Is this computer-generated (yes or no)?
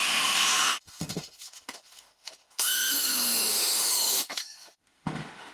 yes